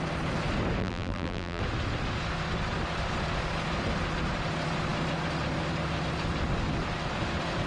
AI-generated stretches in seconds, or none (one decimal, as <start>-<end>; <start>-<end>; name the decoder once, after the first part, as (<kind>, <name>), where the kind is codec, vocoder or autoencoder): 0.8-1.6 (vocoder, BigVGAN v2)